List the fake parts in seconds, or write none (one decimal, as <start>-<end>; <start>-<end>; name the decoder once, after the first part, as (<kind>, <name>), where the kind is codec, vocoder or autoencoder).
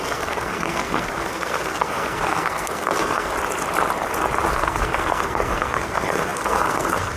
0.0-3.3 (codec, SNAC); 4.5-7.2